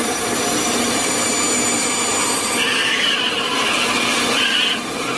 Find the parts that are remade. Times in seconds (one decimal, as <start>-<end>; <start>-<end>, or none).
0.0-1.1; 2.8-3.3

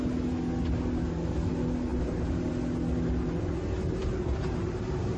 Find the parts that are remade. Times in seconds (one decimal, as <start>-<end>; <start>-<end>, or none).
1.9-2.5; 4.0-5.2

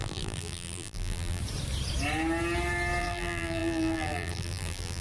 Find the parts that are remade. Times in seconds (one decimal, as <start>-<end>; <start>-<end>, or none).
0.0-1.4; 3.0-5.0

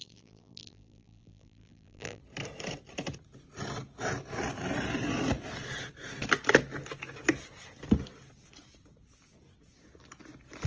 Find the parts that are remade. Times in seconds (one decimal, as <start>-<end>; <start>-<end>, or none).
0.0-2.2

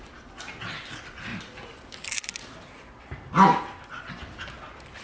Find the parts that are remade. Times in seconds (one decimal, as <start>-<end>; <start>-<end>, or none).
1.3-3.0

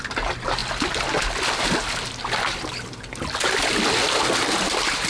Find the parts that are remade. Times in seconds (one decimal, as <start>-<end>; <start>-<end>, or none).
none